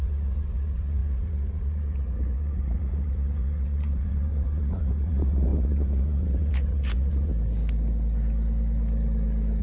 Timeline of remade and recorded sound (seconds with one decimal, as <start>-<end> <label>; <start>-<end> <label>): 0.0-7.3 remade; 7.3-9.6 recorded